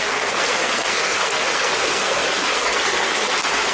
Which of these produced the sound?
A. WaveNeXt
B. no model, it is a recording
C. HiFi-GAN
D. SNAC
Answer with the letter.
D